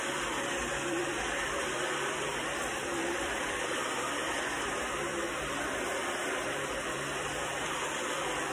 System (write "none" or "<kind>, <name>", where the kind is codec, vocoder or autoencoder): vocoder, BigVGAN v2